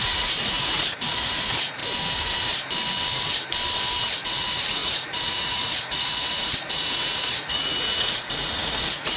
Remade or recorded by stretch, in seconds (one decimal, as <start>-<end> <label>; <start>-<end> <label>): 0.0-1.8 remade; 1.8-4.0 recorded; 4.0-9.2 remade